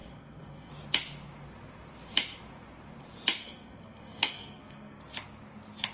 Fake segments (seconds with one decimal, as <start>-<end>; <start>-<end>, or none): 0.0-0.7; 3.4-5.0